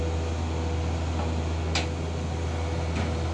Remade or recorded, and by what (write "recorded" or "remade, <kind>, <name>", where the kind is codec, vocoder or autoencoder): recorded